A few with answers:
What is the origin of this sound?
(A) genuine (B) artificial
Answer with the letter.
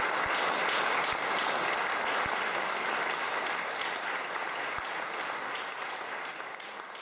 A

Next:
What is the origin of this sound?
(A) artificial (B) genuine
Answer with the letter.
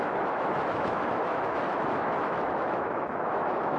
A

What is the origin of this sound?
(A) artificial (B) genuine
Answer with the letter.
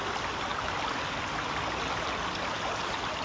B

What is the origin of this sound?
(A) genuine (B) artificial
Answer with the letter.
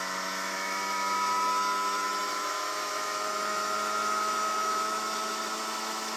B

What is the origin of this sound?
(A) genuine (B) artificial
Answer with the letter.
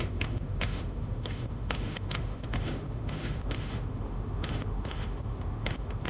B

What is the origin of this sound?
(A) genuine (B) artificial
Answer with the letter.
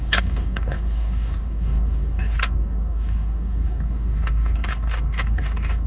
B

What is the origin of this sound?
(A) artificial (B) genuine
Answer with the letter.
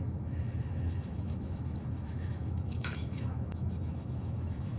A